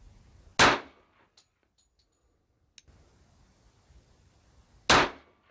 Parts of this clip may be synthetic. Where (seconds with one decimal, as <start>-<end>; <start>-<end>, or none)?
none